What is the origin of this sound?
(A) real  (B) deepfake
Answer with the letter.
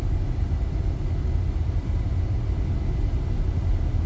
A